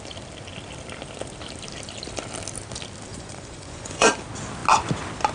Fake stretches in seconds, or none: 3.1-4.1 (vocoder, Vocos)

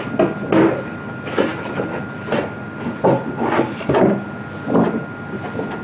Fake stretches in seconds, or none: none

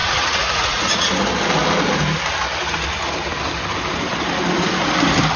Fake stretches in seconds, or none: 0.0-1.1 (vocoder, Vocos)

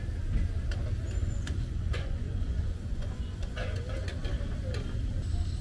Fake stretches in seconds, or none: 1.2-3.8 (vocoder, Vocos)

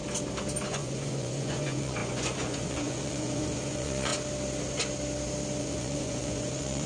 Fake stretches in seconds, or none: 0.7-4.1 (vocoder, Vocos); 5.6-6.9